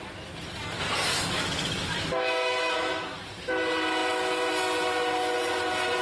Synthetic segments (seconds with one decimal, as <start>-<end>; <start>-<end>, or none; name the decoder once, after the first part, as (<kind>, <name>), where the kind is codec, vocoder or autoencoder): 1.1-3.2 (autoencoder, DAC-VAE)